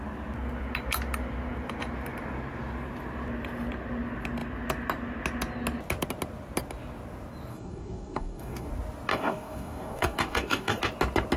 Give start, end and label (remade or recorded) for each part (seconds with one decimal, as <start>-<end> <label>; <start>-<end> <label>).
0.0-7.5 recorded; 7.5-8.7 remade; 8.7-9.1 recorded; 9.1-10.8 remade; 10.8-11.4 recorded